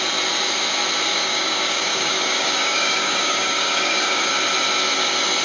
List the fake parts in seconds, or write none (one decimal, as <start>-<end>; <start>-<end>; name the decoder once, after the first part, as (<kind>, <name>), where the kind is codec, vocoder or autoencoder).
1.1-4.3 (codec, DAC)